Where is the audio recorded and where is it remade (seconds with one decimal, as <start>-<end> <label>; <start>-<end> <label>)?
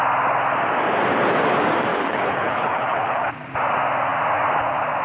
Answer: 0.0-1.9 recorded; 1.9-3.3 remade; 3.3-5.0 recorded